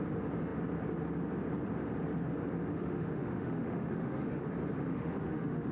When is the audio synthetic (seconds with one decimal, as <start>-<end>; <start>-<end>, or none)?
2.7-4.4; 4.9-5.7

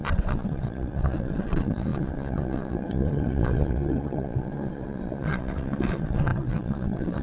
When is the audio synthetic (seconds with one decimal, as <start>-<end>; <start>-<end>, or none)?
0.0-7.2